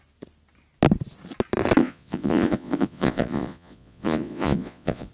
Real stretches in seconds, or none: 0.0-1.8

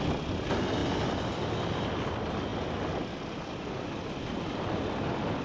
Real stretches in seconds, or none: 0.0-5.4